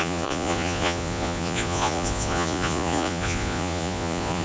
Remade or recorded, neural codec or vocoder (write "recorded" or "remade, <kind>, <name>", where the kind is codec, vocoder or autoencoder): remade, vocoder, Vocos